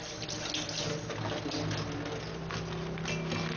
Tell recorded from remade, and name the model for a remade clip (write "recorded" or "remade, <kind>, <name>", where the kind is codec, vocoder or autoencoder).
recorded